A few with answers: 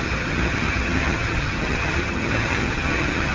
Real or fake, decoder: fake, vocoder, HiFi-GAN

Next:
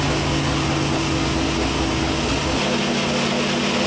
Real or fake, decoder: real